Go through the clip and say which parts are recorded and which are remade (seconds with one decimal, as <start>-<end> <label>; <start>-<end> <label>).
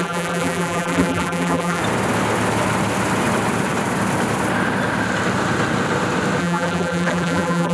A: 0.0-1.8 remade; 1.8-6.4 recorded; 6.4-7.7 remade